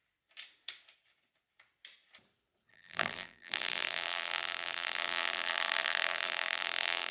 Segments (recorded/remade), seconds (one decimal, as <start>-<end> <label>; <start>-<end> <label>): 0.0-2.7 recorded; 2.7-7.1 remade